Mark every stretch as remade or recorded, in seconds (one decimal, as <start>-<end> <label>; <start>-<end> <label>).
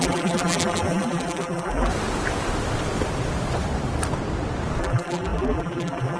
0.0-1.9 remade; 1.9-4.8 recorded; 4.8-6.2 remade